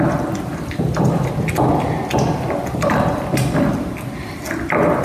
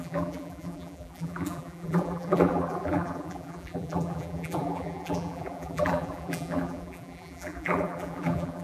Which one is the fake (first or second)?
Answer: second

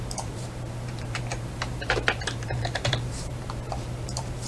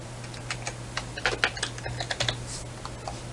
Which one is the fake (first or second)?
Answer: first